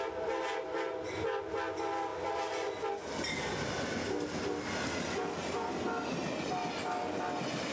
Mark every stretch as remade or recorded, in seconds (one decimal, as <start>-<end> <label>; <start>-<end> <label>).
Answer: 0.0-2.1 recorded; 2.1-2.9 remade; 2.9-7.7 recorded